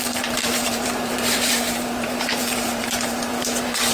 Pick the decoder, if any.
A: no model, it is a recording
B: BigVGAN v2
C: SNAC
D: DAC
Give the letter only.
B